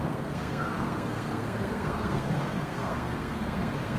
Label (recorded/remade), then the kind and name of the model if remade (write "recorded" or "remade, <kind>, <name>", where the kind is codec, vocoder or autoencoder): remade, codec, SNAC